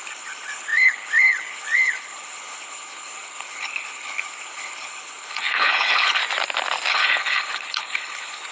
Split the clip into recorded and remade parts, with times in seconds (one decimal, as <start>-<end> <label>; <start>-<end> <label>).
0.0-6.2 remade; 6.2-6.9 recorded; 6.9-8.5 remade